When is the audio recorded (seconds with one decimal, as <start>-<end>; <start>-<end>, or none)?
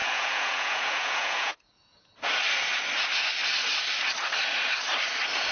2.3-5.5